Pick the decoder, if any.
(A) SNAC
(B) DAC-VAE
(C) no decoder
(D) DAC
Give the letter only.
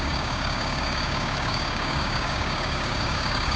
D